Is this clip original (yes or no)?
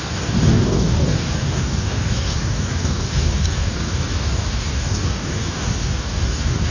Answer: no